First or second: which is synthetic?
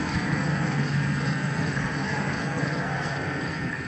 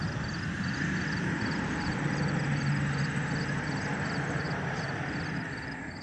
first